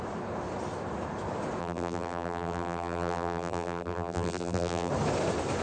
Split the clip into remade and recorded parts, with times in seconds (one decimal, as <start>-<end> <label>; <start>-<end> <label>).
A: 0.0-1.6 recorded; 1.6-4.9 remade; 4.9-5.6 recorded